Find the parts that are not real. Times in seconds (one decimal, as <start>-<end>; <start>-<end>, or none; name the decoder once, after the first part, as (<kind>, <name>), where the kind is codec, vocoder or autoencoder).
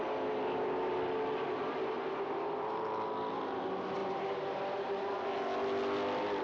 none